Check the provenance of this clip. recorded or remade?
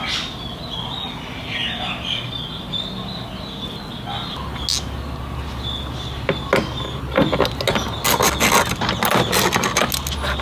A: recorded